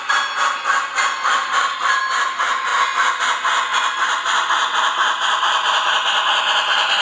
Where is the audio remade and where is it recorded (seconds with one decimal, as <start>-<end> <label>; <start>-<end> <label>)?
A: 0.0-1.4 recorded; 1.4-2.0 remade; 2.0-3.7 recorded; 3.7-5.9 remade; 5.9-7.0 recorded